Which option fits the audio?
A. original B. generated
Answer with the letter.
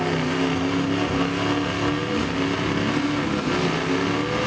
A